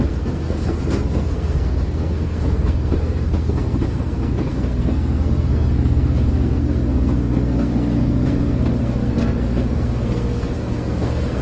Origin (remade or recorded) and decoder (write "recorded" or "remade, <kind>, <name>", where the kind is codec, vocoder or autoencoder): remade, codec, SNAC